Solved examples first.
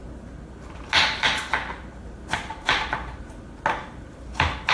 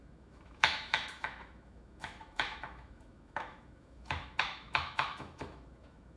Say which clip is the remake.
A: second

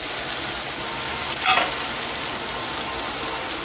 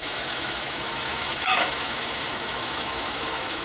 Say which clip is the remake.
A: second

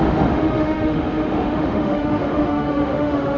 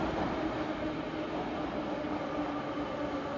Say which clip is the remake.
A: first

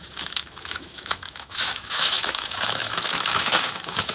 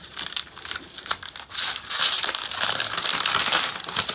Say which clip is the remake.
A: first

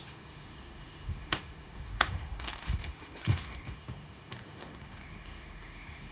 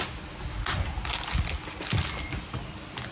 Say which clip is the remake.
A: first